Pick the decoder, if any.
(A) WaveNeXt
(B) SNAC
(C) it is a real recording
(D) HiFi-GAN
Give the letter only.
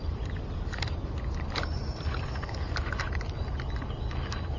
C